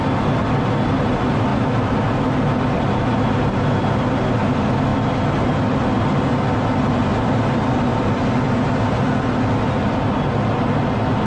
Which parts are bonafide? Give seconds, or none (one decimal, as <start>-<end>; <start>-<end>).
0.0-11.3

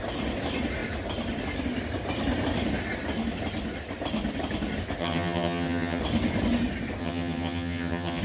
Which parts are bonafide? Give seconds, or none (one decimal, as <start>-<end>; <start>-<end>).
0.0-5.0; 6.0-7.0

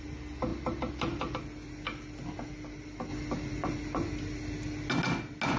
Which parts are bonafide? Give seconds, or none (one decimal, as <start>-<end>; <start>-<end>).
0.0-5.6